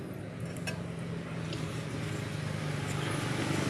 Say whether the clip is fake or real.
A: real